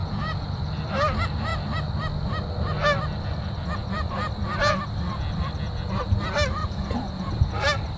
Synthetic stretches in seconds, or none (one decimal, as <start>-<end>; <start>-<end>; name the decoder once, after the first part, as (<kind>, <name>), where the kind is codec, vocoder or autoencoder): 0.0-0.8 (vocoder, Vocos); 6.6-7.5